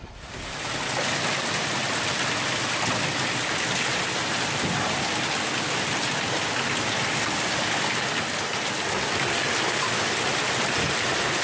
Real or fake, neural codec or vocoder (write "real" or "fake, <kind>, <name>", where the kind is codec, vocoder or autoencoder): real